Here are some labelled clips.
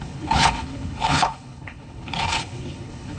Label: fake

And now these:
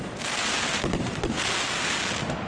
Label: real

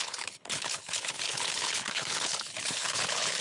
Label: fake